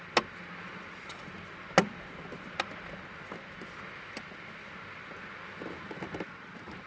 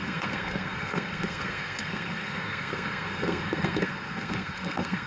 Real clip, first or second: first